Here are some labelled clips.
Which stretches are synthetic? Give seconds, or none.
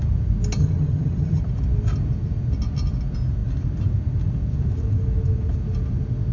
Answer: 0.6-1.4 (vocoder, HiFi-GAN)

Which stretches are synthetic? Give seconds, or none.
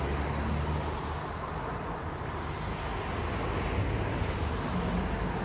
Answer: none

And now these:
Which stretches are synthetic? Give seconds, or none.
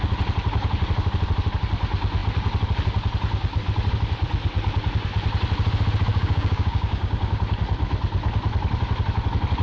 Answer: 6.1-7.1 (codec, DAC)